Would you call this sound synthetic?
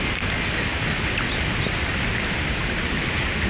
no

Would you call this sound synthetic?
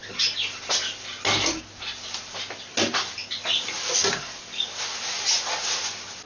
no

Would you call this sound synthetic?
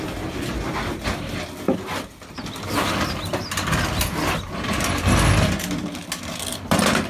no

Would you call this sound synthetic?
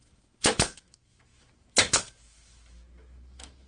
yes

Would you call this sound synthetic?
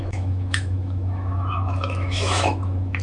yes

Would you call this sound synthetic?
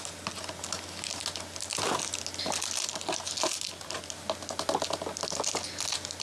no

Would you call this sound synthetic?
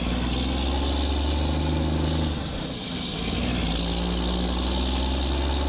no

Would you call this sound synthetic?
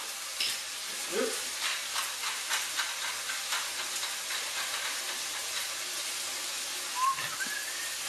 no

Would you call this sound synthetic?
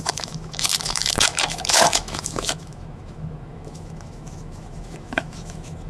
yes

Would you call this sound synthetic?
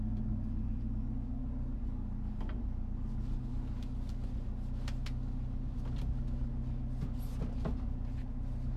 no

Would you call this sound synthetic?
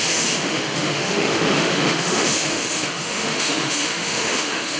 yes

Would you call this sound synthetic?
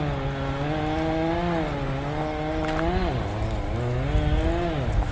no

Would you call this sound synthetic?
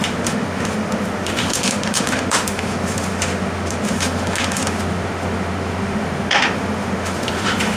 yes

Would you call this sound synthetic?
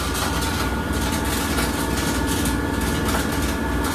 no